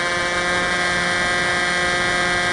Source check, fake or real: real